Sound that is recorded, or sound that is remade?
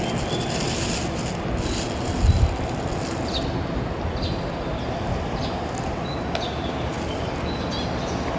recorded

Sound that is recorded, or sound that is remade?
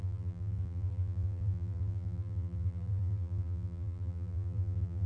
remade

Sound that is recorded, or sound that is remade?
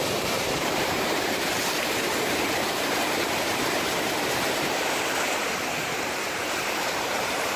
remade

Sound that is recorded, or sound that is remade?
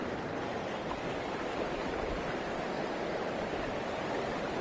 recorded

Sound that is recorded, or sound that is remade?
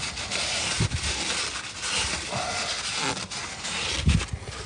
recorded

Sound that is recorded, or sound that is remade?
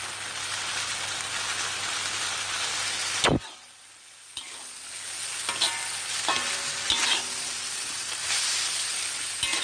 recorded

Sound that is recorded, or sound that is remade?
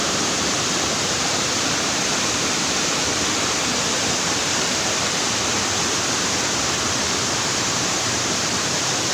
remade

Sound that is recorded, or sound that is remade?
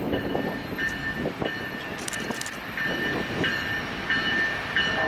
recorded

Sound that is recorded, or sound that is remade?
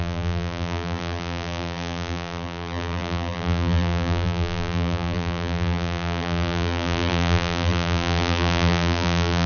remade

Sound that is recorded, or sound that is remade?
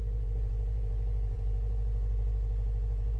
remade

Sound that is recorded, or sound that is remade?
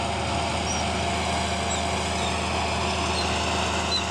recorded